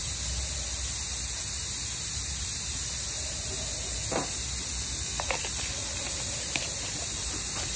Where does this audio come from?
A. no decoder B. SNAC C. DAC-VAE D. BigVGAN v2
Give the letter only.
A